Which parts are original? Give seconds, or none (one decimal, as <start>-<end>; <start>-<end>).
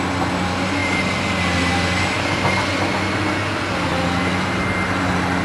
0.0-5.4